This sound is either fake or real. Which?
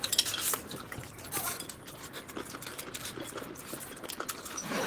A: real